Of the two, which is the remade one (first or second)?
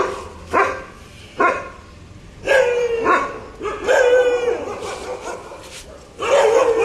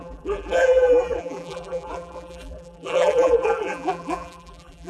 second